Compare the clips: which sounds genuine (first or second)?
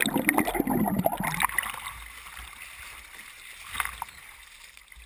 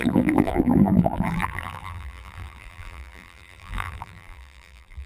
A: first